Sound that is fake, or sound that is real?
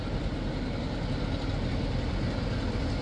real